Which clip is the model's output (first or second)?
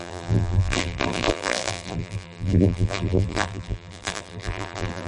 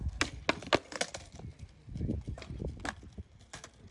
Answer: first